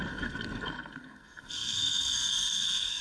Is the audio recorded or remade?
remade